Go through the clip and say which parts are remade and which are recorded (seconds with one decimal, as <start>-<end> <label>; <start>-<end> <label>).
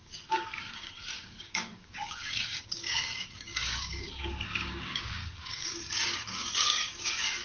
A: 0.0-7.4 remade